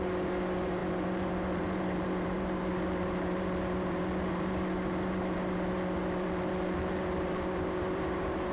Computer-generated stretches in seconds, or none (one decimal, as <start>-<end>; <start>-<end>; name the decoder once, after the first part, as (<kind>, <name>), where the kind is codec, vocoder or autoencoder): 0.0-8.5 (vocoder, BigVGAN v2)